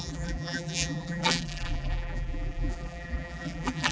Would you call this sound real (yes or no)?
no